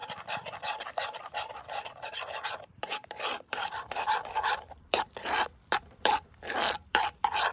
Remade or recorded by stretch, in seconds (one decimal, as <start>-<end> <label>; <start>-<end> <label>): 0.0-7.5 remade